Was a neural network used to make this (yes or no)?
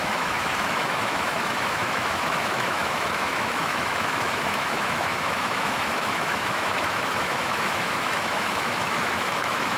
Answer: yes